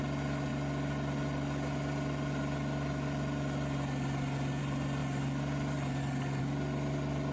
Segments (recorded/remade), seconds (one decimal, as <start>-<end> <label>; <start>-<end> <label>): 0.0-7.3 recorded